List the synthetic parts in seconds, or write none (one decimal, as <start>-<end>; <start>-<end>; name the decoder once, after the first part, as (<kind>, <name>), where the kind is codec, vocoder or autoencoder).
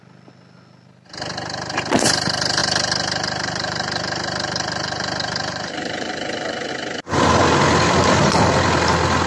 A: 2.6-6.7 (vocoder, BigVGAN v2)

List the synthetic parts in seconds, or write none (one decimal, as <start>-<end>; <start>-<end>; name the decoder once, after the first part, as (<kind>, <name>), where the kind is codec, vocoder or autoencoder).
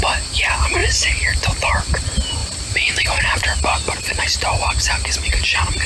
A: 2.4-4.2 (vocoder, BigVGAN v2)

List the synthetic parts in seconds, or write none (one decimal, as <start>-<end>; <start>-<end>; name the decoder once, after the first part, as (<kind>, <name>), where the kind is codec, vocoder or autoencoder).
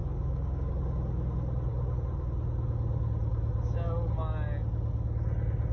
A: 0.0-0.7 (codec, DAC)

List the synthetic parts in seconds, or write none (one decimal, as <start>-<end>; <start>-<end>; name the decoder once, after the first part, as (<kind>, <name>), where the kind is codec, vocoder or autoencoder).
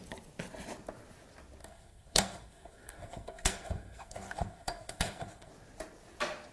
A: 1.6-5.5 (codec, SNAC)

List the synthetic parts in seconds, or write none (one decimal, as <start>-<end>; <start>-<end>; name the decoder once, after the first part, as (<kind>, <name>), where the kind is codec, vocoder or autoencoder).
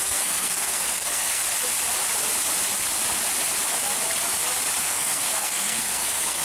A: 0.0-1.4 (codec, SNAC); 4.8-6.4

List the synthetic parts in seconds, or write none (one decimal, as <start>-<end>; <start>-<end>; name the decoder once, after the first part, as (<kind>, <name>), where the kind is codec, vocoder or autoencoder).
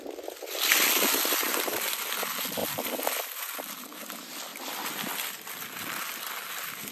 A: 2.6-3.4 (vocoder, BigVGAN v2)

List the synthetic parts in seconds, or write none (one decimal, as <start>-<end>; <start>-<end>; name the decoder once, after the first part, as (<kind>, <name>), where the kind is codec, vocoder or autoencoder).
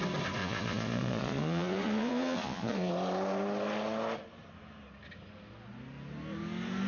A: 0.4-2.9 (vocoder, Vocos)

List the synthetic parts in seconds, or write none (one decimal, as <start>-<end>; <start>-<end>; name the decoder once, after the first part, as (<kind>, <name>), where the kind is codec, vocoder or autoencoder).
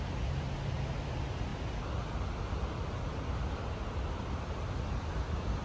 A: none